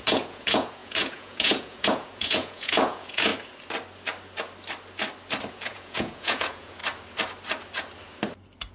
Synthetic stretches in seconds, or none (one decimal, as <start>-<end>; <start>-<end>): 0.0-3.3; 5.5-6.8